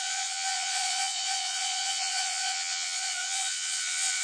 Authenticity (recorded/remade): remade